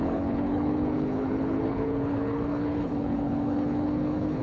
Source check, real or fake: fake